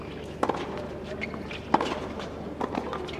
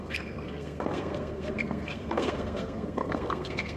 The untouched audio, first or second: first